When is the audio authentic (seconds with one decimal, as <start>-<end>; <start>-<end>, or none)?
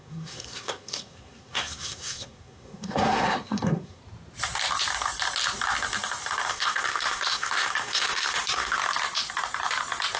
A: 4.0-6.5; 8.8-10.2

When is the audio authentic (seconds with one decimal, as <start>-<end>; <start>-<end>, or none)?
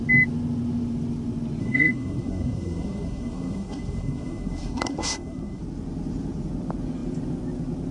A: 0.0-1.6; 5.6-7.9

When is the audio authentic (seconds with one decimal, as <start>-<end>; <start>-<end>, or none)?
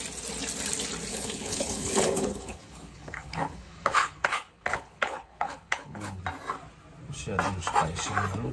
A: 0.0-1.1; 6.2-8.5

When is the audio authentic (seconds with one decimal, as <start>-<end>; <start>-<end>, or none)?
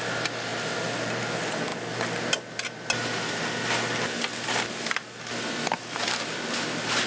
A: 0.0-7.1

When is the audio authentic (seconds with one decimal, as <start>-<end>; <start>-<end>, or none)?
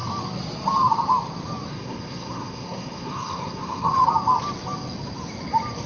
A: 0.0-1.7; 3.9-5.9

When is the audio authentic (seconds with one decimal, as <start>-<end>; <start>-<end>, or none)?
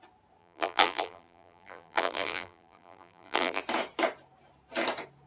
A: 0.0-0.4; 3.6-5.3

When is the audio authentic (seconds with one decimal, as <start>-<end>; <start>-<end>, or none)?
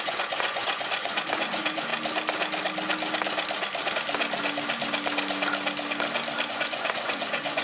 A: 1.9-6.5